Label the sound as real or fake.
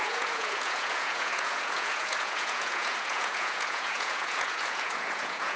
fake